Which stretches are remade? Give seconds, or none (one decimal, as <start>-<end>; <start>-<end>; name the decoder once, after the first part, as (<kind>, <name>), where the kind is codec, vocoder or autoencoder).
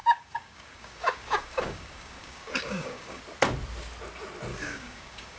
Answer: 0.0-3.2 (codec, DAC); 4.5-5.4